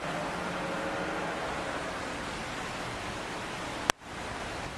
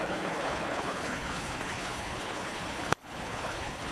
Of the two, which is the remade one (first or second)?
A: second